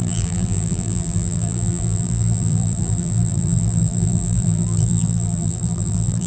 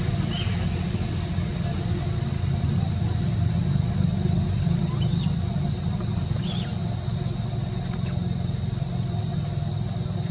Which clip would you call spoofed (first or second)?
first